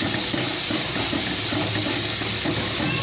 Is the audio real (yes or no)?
yes